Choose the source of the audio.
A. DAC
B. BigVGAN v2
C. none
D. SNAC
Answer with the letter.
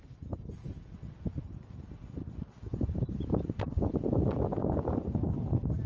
C